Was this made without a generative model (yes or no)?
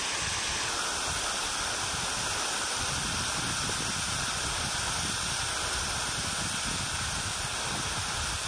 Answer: yes